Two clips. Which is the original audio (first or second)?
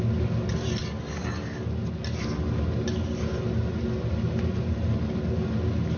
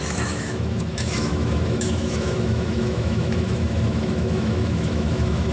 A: first